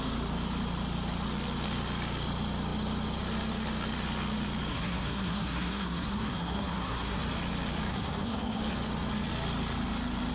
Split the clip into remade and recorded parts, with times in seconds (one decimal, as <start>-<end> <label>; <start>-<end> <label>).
0.0-4.7 recorded; 4.7-7.2 remade; 7.2-7.9 recorded; 7.9-8.6 remade; 8.6-10.3 recorded